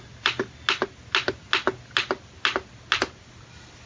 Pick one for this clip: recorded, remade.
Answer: recorded